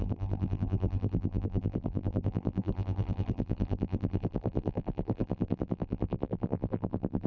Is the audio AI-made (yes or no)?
yes